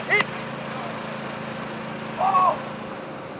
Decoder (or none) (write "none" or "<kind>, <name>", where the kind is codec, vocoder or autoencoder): none